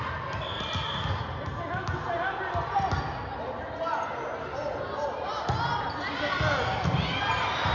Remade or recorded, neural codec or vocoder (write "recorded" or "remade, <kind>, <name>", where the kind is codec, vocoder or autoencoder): recorded